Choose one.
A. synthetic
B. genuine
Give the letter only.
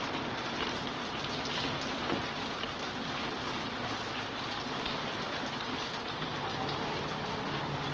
B